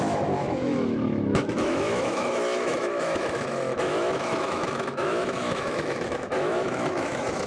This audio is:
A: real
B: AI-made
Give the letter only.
B